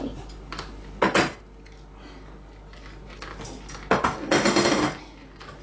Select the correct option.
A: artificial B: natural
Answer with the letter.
B